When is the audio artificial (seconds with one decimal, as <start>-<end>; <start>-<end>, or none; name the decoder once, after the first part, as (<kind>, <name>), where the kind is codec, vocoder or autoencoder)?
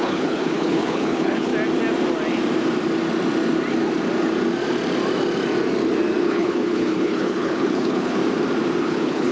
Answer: 0.0-1.5 (codec, HILCodec); 6.2-8.2; 8.8-9.3